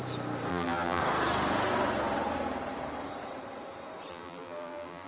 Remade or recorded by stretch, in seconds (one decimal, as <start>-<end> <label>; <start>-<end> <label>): 0.0-0.5 recorded; 0.5-1.0 remade; 1.0-4.1 recorded; 4.1-5.1 remade